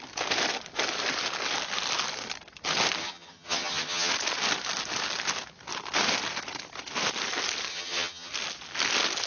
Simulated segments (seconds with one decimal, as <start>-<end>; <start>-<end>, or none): 3.0-4.1; 7.7-8.3

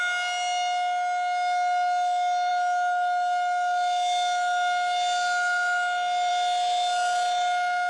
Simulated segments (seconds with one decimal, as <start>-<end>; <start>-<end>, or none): none

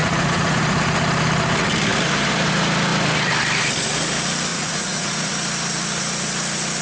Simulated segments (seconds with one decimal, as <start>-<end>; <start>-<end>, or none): 0.0-0.6; 4.5-5.3

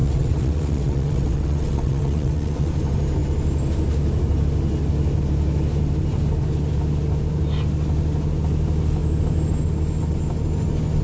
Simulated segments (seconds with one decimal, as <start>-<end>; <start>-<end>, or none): 0.0-2.7

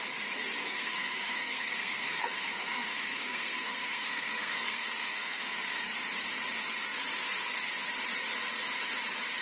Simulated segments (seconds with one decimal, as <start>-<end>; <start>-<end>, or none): 0.6-5.4

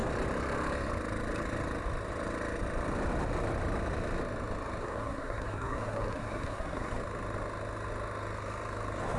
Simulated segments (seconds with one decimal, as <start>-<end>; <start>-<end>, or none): 4.8-6.9